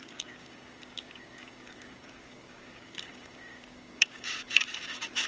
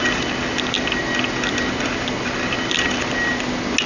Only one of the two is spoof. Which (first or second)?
first